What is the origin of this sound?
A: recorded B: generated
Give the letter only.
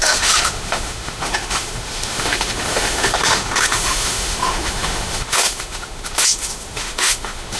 B